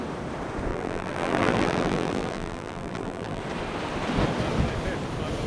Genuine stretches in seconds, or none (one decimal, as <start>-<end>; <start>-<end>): 0.0-0.7; 3.4-5.5